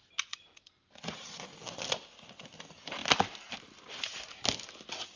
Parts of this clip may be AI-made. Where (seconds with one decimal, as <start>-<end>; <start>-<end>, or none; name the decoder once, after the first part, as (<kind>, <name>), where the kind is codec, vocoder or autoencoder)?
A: none